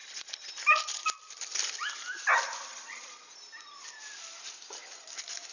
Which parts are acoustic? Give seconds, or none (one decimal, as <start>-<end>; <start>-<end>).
0.5-2.7; 3.3-5.5